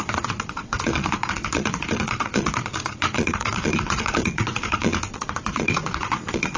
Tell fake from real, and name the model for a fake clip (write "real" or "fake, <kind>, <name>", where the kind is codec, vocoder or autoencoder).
fake, vocoder, Vocos